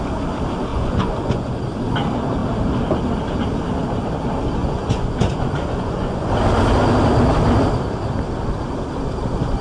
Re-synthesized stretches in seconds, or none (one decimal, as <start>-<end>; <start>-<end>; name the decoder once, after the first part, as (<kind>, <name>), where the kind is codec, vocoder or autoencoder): 0.7-1.6 (vocoder, Vocos); 4.6-6.3